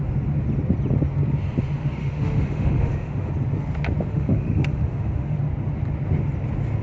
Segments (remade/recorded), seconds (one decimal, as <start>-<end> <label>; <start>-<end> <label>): 0.0-2.0 recorded; 2.0-3.3 remade; 3.3-4.1 recorded; 4.1-5.4 remade; 5.4-6.8 recorded